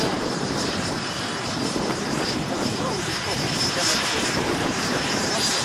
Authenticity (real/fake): fake